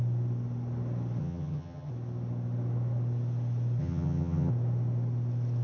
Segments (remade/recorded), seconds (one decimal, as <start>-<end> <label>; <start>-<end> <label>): 0.0-1.2 recorded; 1.2-1.9 remade; 1.9-3.8 recorded; 3.8-4.5 remade; 4.5-5.6 recorded